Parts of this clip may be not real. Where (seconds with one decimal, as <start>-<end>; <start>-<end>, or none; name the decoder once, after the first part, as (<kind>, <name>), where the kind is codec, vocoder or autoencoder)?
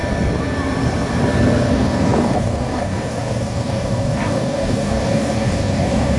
1.7-6.2 (codec, DAC)